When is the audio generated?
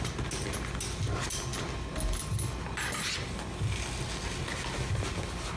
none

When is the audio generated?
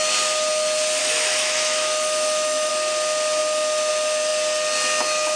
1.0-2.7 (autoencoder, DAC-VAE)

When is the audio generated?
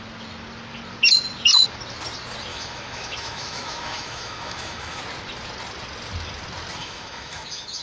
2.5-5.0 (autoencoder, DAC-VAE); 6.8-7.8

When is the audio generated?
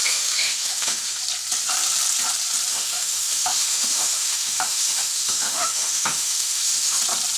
0.0-1.2 (autoencoder, DAC-VAE); 2.7-7.0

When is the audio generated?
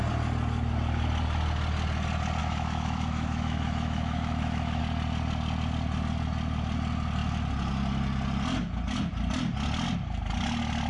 2.4-4.8 (autoencoder, DAC-VAE)